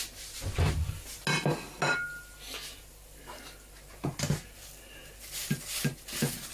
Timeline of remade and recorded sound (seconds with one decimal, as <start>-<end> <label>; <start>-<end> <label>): 0.0-6.5 recorded